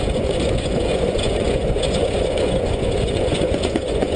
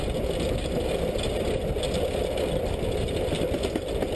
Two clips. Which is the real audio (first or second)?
second